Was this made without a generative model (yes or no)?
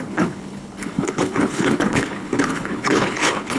no